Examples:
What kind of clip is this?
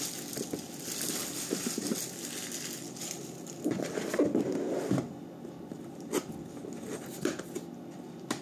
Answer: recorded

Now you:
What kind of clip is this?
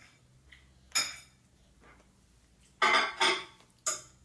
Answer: recorded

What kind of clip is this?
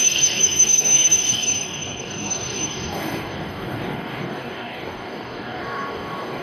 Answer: remade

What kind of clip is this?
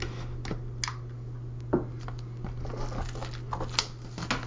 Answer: recorded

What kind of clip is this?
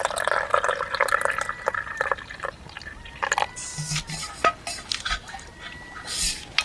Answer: recorded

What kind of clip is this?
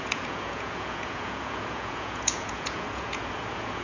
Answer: remade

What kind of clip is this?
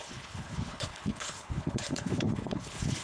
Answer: remade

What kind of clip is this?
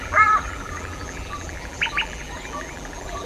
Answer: remade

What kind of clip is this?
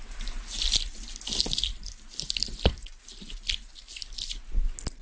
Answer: recorded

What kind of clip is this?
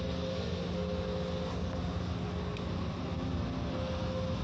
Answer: recorded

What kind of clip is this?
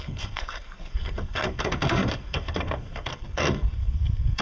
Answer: remade